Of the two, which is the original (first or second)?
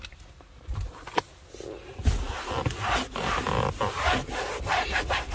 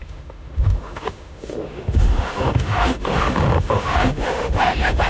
first